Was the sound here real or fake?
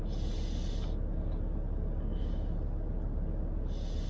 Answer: real